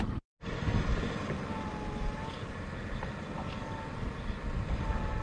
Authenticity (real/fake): real